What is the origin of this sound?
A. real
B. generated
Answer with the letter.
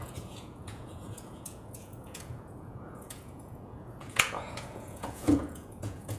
B